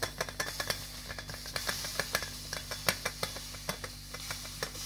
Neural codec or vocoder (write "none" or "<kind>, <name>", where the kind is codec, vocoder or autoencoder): none